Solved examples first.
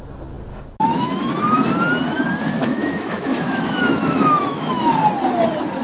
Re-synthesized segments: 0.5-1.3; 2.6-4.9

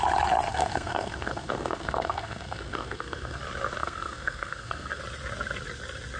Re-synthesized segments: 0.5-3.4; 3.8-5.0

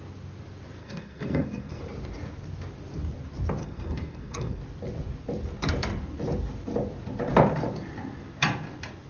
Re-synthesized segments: 0.8-1.8; 3.6-4.6

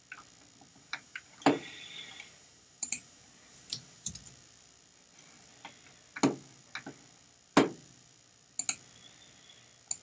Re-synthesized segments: 0.7-4.1

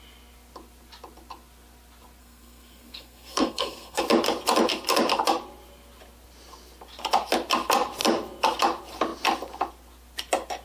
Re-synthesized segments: 2.2-4.0